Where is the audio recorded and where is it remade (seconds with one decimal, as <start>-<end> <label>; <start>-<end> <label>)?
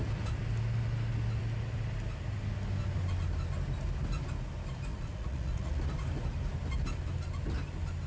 0.0-4.9 recorded; 4.9-5.8 remade; 5.8-8.1 recorded